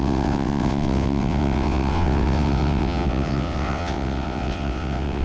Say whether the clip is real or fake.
fake